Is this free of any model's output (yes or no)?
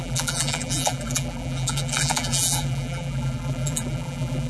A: no